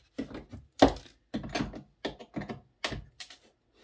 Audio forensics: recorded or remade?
recorded